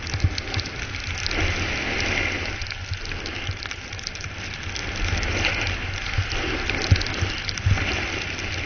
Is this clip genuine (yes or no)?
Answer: yes